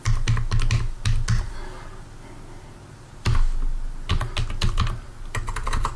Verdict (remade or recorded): recorded